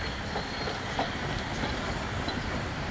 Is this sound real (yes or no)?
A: yes